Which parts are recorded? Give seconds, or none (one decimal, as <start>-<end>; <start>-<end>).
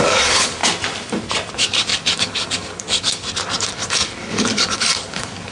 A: 0.6-1.5